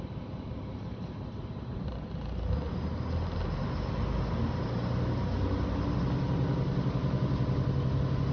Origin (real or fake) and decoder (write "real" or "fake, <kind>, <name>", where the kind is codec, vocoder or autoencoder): real